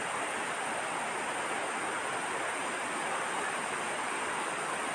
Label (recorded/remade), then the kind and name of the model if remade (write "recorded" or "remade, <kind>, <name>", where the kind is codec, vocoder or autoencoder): recorded